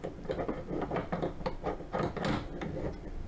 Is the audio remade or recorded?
recorded